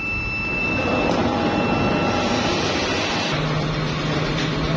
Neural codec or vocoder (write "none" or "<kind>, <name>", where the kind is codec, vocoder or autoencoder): none